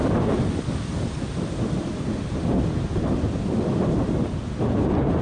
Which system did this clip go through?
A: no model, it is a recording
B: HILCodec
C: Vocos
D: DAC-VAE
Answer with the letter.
A